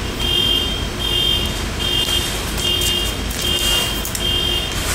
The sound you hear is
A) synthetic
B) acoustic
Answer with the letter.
B